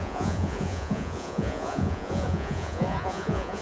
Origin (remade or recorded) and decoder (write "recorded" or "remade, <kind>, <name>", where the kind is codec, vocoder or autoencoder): remade, vocoder, Vocos